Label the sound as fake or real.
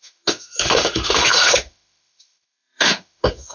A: fake